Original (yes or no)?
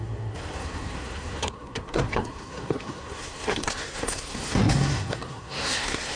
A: no